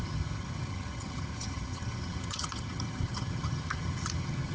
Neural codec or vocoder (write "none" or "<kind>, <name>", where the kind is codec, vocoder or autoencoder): vocoder, HiFi-GAN